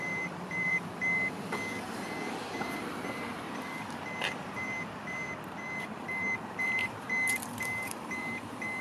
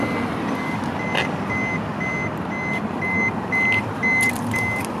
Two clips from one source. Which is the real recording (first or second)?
second